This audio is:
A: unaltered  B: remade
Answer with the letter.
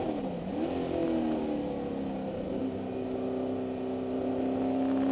A